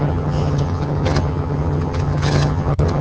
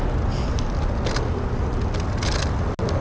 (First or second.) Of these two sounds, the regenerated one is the first